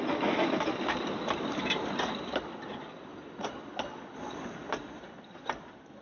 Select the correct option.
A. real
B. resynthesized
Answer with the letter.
A